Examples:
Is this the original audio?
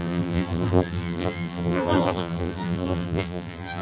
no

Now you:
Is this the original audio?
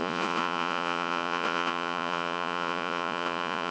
no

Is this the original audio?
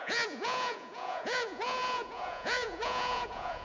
no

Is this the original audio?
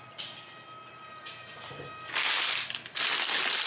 yes